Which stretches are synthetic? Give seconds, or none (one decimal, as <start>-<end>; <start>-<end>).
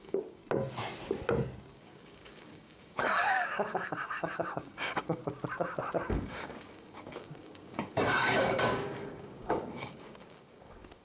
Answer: 0.0-0.4; 1.7-5.2; 6.0-11.0